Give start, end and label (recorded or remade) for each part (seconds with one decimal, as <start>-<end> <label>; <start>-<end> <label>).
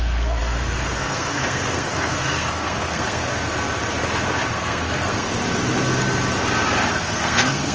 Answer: 0.0-3.3 remade; 3.3-4.5 recorded; 4.5-5.4 remade; 5.4-6.9 recorded; 6.9-7.7 remade